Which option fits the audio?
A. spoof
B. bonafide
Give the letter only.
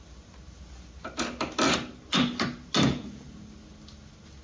B